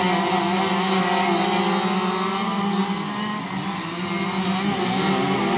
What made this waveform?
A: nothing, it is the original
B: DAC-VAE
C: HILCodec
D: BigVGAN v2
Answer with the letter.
A